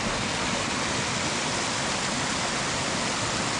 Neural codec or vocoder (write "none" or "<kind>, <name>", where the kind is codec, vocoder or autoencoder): none